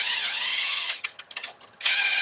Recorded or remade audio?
remade